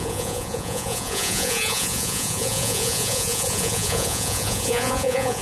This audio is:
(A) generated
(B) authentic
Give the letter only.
A